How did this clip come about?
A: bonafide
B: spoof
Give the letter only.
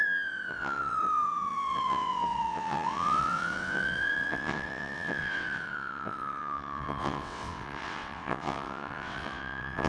B